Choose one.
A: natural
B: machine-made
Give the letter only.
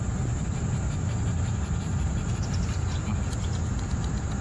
B